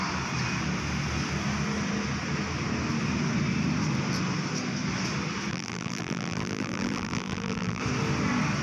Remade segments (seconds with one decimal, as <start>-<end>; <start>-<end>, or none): 5.5-7.8